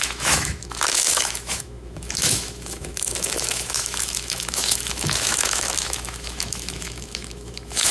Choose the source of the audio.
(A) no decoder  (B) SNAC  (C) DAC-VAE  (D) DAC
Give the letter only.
C